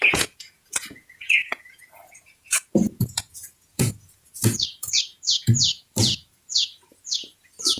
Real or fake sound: fake